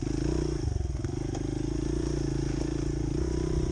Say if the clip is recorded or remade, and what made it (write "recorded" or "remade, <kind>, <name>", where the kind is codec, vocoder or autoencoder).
recorded